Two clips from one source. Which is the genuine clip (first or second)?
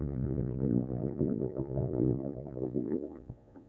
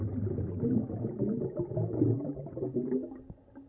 second